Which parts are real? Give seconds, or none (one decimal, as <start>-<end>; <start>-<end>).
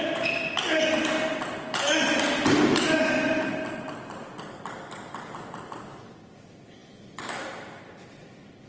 0.0-8.7